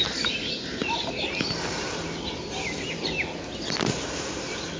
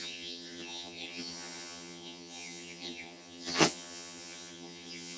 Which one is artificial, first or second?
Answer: second